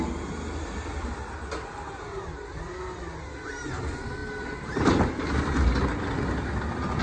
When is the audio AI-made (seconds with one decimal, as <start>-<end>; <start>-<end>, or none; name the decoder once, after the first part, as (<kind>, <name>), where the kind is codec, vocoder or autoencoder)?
none